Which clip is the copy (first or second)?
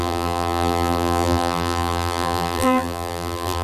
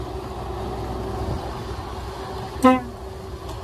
first